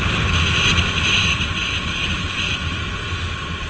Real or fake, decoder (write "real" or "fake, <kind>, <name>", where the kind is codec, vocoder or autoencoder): real